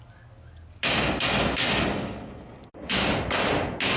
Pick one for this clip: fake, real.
real